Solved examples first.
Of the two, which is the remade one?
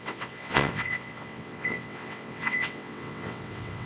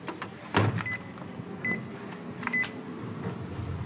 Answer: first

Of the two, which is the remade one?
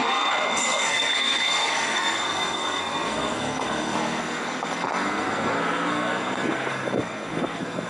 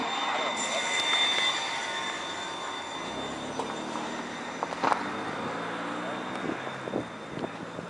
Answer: first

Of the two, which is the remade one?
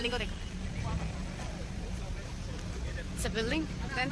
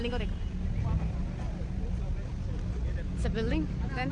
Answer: first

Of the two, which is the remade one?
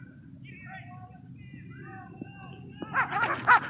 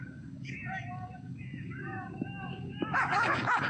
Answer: second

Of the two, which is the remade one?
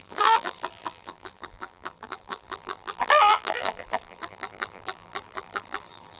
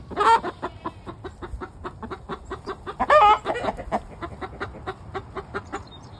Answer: first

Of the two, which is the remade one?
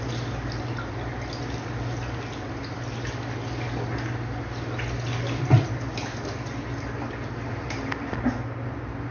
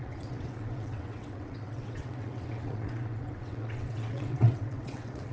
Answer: second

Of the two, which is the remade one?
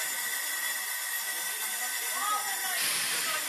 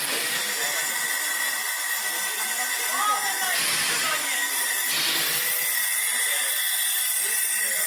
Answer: first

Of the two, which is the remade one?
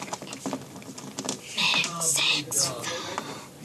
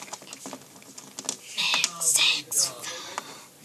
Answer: first